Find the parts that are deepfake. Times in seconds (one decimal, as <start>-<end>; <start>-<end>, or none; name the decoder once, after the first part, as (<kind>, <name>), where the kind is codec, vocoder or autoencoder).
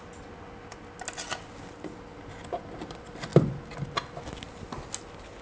none